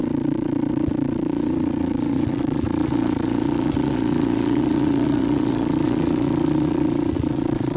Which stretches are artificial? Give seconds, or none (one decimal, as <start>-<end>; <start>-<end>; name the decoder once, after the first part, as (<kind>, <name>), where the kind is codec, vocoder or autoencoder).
0.0-7.8 (vocoder, Vocos)